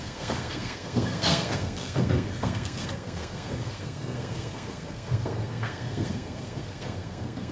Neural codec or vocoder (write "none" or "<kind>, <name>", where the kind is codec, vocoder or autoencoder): codec, SNAC